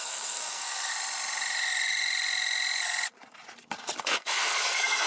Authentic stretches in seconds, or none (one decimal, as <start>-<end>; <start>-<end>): 0.9-4.0